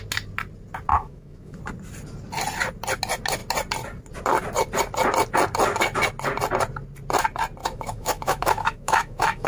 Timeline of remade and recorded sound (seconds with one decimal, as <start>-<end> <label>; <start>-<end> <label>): 0.0-0.9 recorded; 0.9-1.6 remade; 1.6-7.6 recorded; 7.6-9.5 remade